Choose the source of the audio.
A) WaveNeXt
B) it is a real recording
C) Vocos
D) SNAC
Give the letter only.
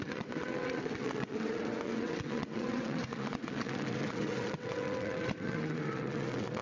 A